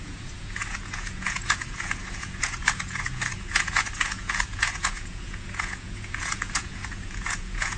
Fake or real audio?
fake